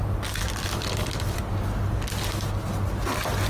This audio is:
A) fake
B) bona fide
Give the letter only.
B